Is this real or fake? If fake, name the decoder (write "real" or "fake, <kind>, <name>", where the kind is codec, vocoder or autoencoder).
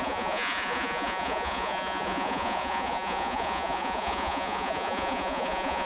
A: fake, vocoder, Vocos